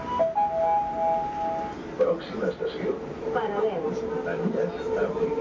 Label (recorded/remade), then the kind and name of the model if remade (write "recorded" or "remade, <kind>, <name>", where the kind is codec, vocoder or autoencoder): recorded